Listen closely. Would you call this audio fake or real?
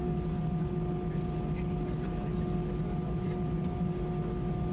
real